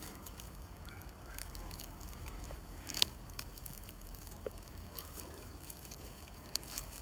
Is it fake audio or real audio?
fake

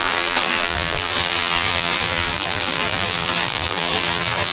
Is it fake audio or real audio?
fake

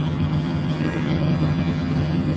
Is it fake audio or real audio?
fake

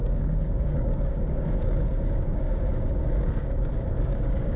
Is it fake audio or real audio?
fake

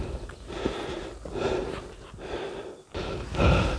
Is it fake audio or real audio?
real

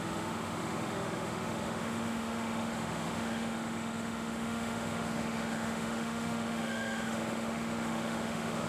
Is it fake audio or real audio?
fake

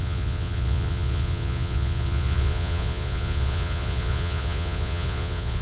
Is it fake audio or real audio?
fake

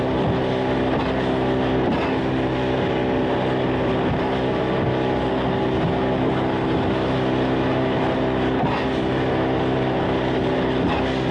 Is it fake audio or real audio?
real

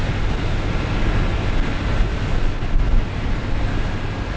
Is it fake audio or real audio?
real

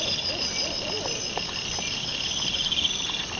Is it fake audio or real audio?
real